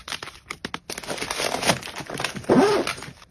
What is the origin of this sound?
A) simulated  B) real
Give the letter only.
B